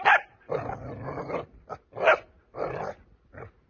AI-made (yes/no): no